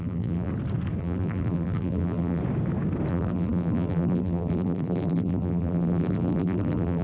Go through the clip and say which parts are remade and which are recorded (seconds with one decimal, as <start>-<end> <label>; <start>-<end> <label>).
0.0-0.5 remade; 0.5-1.0 recorded; 1.0-2.4 remade; 2.4-3.1 recorded; 3.1-7.0 remade